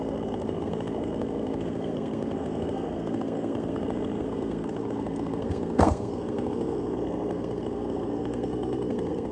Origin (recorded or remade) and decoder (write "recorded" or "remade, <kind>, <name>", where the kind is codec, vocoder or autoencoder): remade, codec, SNAC